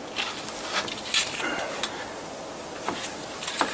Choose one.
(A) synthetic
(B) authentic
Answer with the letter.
B